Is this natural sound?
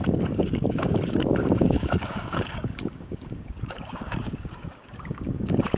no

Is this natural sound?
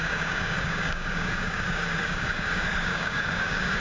no